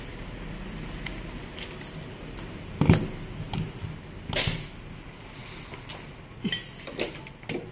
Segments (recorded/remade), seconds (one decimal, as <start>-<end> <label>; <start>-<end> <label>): 0.0-7.7 recorded